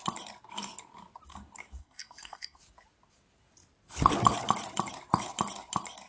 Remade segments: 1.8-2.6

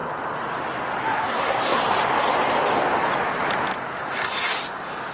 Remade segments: 1.0-1.8

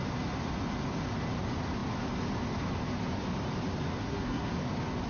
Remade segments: 4.0-4.5

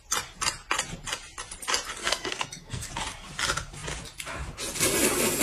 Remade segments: 2.0-2.9

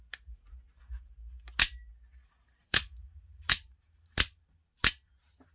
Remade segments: 2.6-4.9